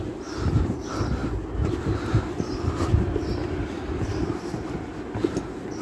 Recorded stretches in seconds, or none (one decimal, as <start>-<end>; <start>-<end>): 0.0-5.8